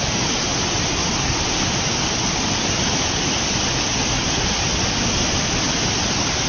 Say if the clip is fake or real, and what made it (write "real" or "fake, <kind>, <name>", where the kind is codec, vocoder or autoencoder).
real